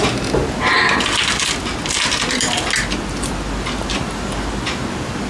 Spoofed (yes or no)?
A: no